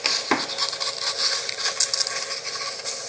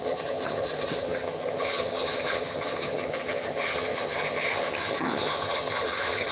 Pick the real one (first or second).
first